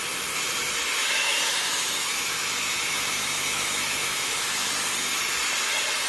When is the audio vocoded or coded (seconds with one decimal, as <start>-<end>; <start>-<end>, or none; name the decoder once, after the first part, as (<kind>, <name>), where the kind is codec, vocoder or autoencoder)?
1.0-4.7 (autoencoder, DAC-VAE)